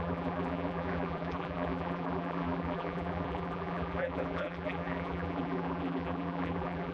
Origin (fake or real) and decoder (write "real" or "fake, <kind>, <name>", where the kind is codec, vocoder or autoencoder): fake, vocoder, BigVGAN v2